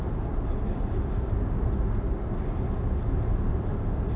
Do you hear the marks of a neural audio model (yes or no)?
no